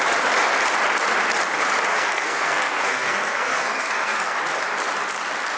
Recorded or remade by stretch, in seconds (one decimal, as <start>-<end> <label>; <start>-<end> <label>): 0.0-1.9 recorded; 1.9-4.4 remade; 4.4-5.6 recorded